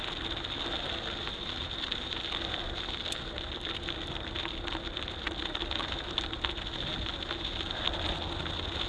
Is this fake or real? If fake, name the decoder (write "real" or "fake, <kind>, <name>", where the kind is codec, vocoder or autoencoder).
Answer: real